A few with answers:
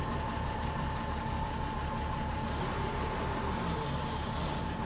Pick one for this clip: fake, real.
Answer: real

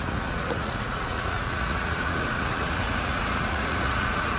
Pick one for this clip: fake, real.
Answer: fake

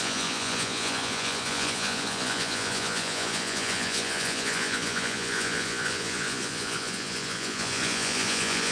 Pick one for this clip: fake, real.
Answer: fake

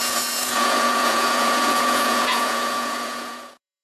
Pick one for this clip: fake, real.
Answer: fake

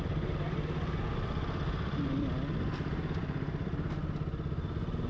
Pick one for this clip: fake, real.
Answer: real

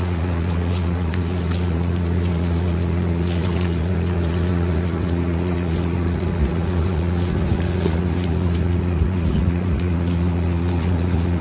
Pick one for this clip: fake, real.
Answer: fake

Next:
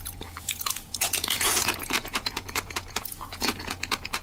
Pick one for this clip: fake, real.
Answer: fake